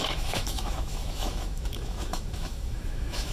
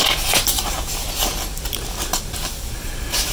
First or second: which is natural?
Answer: second